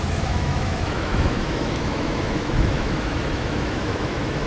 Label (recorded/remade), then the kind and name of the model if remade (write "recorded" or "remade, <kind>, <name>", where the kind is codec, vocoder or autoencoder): remade, autoencoder, DAC-VAE